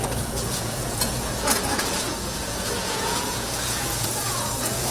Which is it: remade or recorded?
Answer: remade